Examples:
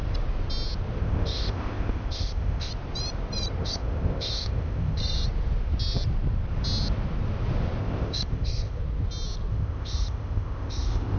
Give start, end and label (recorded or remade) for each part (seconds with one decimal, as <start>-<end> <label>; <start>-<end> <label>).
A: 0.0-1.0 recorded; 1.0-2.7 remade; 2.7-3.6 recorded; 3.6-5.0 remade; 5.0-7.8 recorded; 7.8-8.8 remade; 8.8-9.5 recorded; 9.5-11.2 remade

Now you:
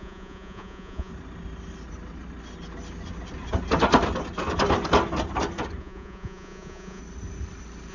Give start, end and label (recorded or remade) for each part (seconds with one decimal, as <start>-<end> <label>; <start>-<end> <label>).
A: 0.0-1.1 remade; 1.1-5.8 recorded; 5.8-7.0 remade; 7.0-7.9 recorded

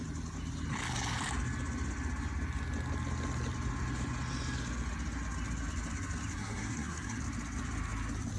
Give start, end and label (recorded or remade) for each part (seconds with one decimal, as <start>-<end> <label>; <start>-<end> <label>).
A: 0.0-6.3 recorded; 6.3-7.2 remade; 7.2-8.4 recorded

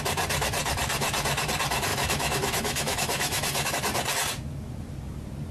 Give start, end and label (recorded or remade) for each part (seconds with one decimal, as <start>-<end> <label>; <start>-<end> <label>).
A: 0.0-1.9 recorded; 1.9-3.7 remade; 3.7-5.5 recorded

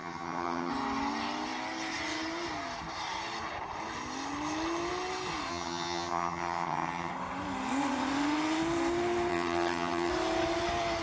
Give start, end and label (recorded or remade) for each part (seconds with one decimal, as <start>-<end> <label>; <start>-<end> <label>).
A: 0.0-0.7 remade; 0.7-5.5 recorded; 5.5-7.1 remade; 7.1-9.3 recorded; 9.3-10.1 remade; 10.1-11.0 recorded

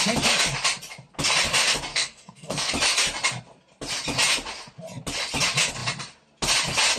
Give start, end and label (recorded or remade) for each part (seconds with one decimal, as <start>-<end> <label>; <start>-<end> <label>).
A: 0.0-1.9 recorded; 1.9-2.7 remade; 2.7-7.0 recorded

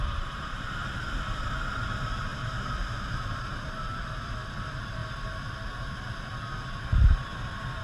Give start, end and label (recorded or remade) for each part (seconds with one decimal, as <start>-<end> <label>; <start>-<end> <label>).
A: 0.0-5.0 remade; 5.0-7.8 recorded